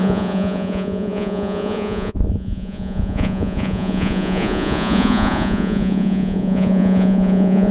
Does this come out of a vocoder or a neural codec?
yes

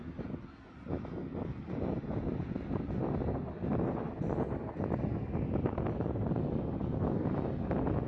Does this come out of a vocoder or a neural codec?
no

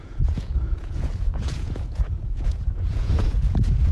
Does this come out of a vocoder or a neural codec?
yes